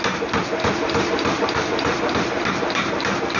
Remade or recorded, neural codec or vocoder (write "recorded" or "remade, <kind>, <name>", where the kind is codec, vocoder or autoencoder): remade, vocoder, BigVGAN v2